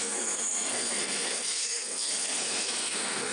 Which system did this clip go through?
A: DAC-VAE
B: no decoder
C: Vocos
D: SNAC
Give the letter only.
D